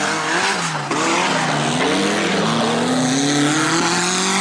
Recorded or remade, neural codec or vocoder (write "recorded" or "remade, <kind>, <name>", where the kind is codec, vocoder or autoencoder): recorded